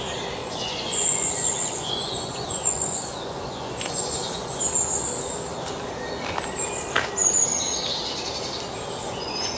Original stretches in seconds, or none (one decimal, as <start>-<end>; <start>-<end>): 0.0-0.4; 4.6-9.0